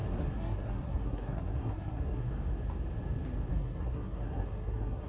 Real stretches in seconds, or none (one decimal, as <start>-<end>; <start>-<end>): 2.3-3.5